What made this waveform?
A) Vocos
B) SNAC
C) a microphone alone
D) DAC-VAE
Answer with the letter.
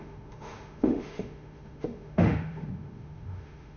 D